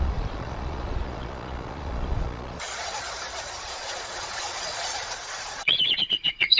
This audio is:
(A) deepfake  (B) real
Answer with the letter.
A